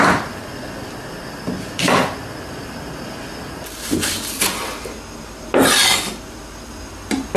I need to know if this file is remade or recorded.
recorded